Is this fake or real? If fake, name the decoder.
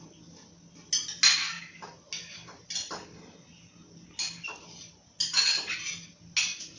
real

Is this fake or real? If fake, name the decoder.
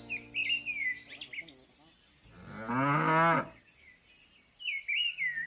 real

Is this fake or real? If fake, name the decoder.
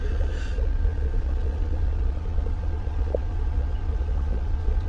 fake, vocoder, Vocos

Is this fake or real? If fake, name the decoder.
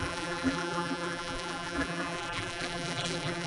fake, vocoder, BigVGAN v2